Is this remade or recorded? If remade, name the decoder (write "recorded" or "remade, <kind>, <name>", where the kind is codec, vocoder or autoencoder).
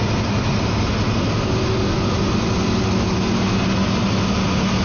recorded